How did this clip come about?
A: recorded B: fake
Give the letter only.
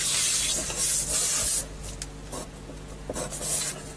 A